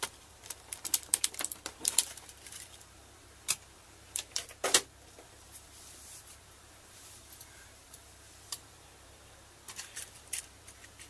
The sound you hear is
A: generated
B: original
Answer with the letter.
A